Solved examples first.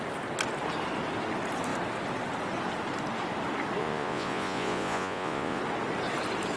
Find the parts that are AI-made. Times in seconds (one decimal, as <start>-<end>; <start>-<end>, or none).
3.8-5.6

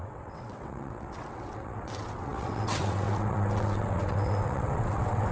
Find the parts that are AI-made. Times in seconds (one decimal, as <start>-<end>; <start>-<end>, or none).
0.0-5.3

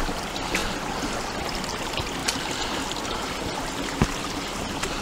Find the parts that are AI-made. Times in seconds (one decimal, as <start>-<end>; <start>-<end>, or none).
none

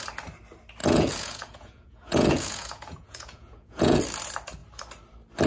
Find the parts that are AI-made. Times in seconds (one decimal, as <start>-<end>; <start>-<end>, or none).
0.8-4.0

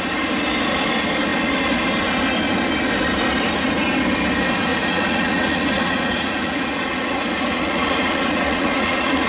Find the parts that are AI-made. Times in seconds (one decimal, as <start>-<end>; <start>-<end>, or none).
4.7-9.3